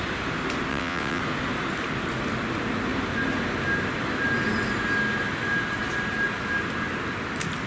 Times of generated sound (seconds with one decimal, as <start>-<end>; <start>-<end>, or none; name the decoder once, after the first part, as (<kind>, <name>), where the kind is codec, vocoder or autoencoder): 0.7-1.2 (vocoder, WaveNeXt)